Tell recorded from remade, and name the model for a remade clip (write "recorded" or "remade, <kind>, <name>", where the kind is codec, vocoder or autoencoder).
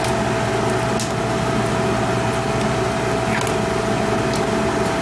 recorded